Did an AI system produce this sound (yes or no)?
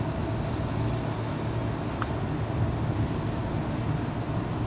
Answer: no